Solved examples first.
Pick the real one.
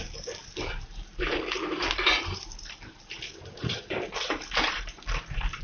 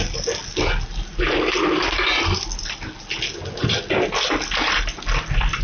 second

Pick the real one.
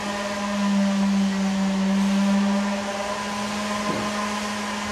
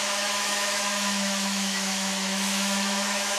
first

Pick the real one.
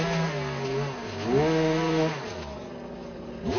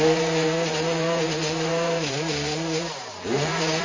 first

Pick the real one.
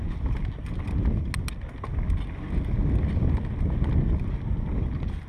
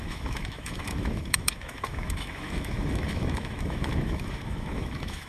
first